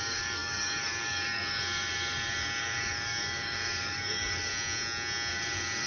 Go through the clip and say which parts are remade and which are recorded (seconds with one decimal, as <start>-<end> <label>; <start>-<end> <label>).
0.0-4.5 remade; 4.5-5.3 recorded; 5.3-5.9 remade